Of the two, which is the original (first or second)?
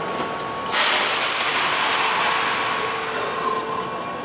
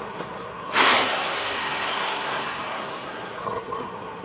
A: first